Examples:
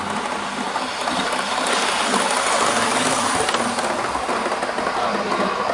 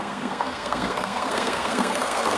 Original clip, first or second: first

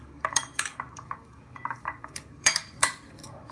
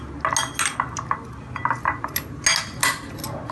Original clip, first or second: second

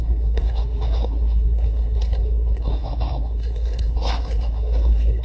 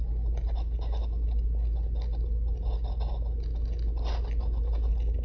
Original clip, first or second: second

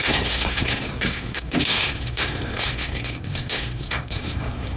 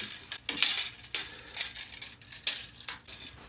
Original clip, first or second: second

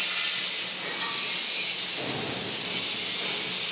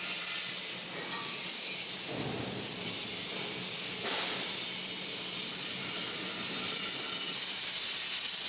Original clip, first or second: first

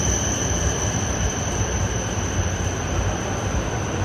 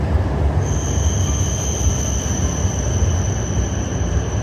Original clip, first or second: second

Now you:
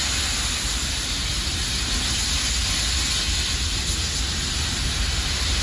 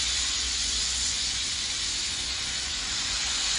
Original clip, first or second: first